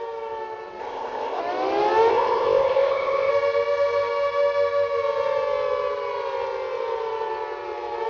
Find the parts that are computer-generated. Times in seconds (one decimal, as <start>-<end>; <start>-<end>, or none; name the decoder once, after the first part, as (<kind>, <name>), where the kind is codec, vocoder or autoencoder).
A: 0.8-1.4 (codec, ZipCodec); 2.1-3.3